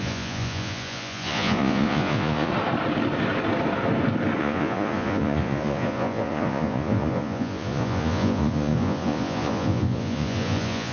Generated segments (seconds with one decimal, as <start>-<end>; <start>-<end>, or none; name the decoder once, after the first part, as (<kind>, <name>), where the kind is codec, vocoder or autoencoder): 0.0-2.5 (vocoder, Vocos); 4.4-10.9